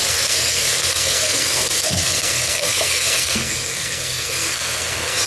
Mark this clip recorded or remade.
remade